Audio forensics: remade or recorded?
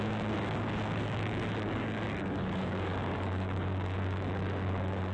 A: remade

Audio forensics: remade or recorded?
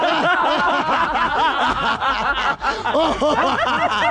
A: recorded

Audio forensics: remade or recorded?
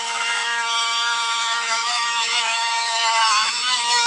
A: remade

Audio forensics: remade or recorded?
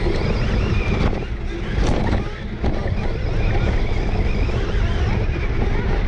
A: recorded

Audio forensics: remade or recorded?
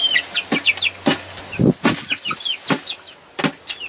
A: recorded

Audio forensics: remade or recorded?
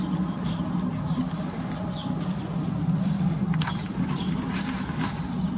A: recorded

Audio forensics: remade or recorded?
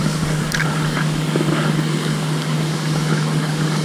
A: remade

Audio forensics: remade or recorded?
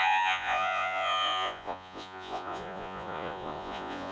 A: remade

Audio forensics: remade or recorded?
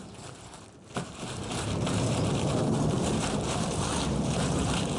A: remade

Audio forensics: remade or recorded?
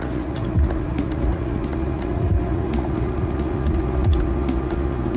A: remade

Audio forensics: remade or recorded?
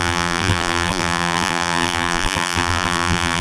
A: remade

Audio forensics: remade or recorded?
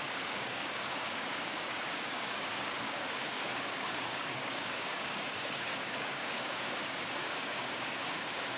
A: remade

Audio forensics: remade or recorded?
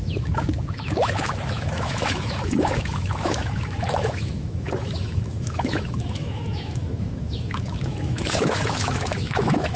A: remade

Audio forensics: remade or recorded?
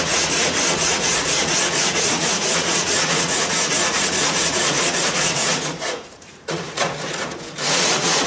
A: remade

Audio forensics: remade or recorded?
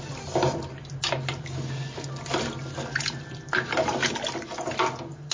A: recorded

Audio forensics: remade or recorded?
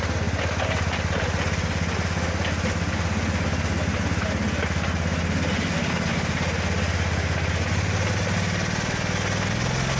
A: recorded